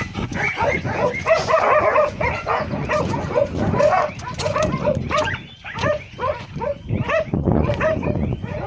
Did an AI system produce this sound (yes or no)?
yes